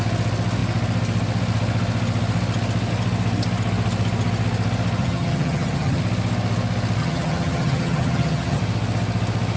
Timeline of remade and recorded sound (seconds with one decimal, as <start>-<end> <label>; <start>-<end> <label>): 0.0-5.0 recorded; 5.0-6.0 remade; 6.0-7.0 recorded; 7.0-8.6 remade; 8.6-9.6 recorded